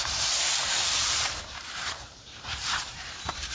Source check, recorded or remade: remade